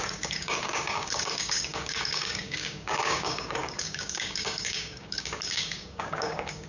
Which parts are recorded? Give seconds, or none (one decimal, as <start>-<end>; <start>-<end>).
none